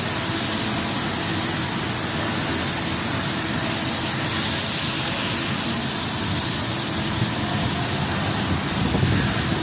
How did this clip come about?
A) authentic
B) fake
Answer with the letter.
A